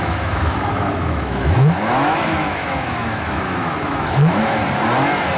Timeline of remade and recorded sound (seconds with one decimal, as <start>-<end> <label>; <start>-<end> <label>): 0.0-4.6 remade; 4.6-5.4 recorded